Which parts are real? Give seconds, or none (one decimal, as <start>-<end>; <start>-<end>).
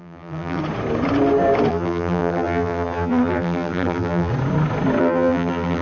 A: 0.6-1.7; 4.3-5.0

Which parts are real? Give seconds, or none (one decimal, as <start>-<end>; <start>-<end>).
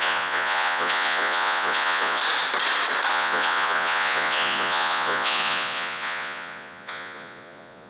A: 2.2-3.1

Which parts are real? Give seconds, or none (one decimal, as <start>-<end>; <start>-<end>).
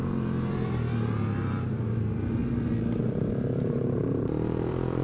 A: 2.4-3.3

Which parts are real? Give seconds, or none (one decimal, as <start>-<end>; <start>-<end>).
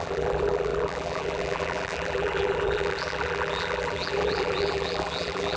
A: none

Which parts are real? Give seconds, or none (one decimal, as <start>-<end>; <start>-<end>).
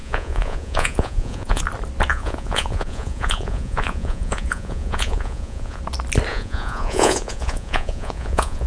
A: 1.6-2.1; 5.8-6.3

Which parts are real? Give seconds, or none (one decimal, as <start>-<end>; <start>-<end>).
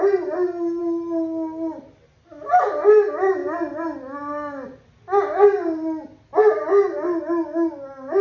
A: 0.0-8.2